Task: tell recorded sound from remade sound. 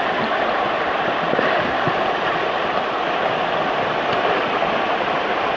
recorded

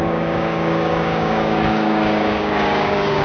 remade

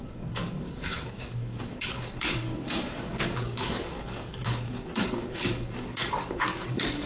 remade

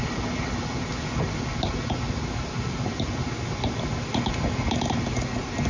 recorded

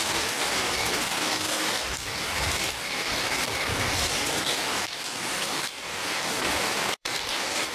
remade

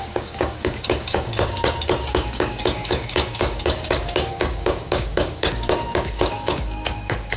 remade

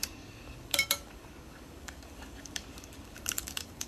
remade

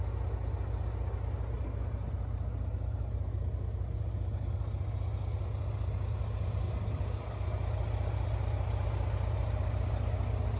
recorded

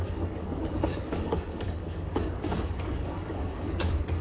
remade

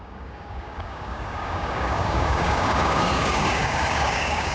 remade